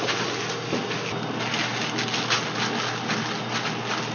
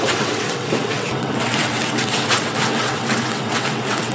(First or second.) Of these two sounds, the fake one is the second